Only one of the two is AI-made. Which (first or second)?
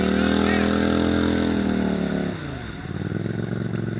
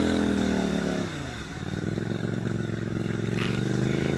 second